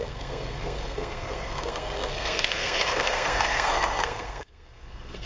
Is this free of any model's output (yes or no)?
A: no